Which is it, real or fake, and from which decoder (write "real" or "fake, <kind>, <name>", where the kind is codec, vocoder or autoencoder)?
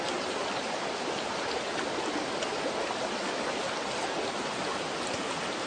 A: real